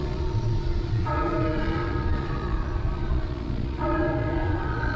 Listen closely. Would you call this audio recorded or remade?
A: remade